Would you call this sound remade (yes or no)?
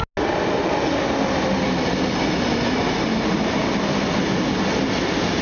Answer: no